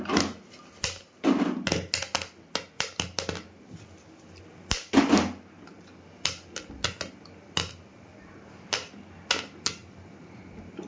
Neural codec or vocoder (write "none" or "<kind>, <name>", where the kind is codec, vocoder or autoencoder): none